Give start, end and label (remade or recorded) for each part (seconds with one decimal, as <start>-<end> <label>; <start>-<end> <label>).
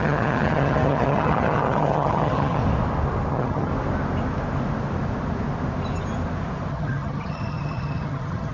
0.0-2.6 remade; 2.6-3.3 recorded; 3.3-3.7 remade; 3.7-6.7 recorded; 6.7-8.5 remade